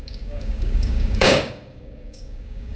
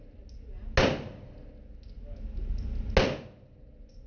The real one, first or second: second